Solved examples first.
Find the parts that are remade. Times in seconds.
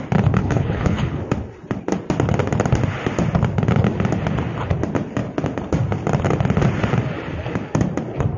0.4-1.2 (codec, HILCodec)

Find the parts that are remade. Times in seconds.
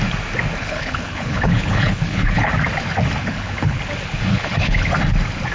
0.6-2.5 (codec, HILCodec); 3.2-3.8; 4.3-4.9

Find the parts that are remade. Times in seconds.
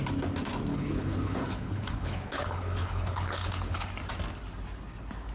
0.7-3.9 (codec, HILCodec)